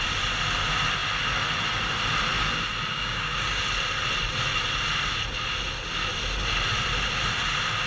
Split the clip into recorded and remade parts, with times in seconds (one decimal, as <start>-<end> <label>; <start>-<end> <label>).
0.0-2.9 recorded; 2.9-3.6 remade; 3.6-7.9 recorded